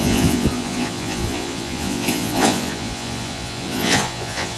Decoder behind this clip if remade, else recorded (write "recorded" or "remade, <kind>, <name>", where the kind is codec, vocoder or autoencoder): remade, vocoder, Vocos